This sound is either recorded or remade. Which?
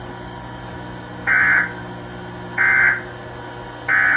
recorded